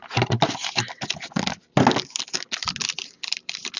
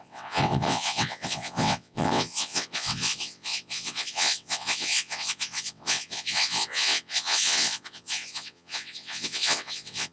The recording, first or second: first